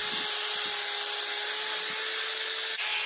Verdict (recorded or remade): recorded